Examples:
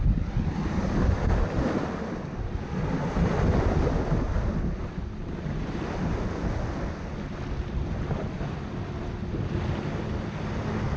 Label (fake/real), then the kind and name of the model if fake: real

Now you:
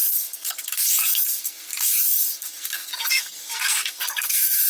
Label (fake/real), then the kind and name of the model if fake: fake, codec, SNAC